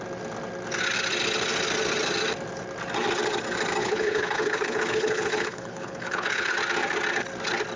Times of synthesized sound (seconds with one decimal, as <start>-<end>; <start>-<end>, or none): 3.8-6.5